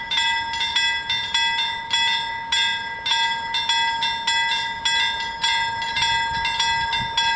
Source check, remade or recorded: recorded